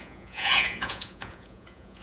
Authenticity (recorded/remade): remade